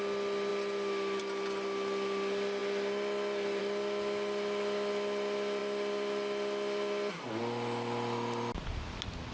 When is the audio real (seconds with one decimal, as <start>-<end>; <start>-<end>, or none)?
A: 0.0-9.3